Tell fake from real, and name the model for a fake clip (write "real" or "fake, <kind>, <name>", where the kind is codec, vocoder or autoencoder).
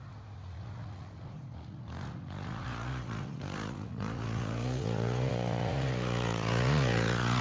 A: fake, vocoder, Vocos